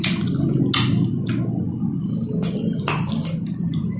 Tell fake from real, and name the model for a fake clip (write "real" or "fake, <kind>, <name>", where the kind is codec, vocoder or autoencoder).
real